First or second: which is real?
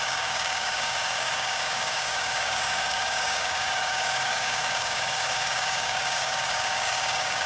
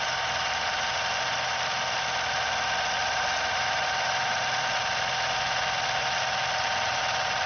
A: second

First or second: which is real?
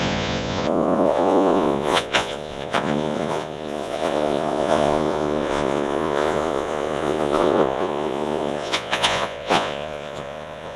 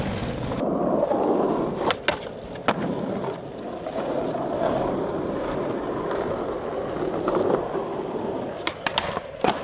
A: second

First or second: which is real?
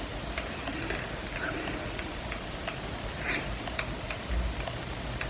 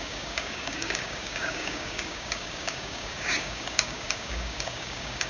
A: first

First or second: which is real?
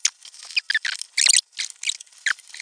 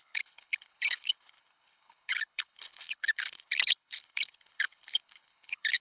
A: first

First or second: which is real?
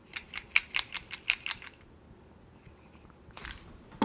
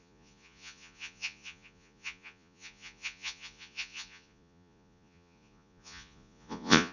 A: first